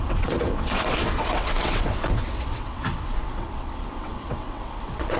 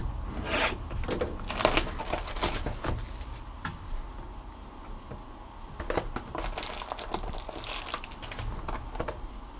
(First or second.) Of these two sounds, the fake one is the first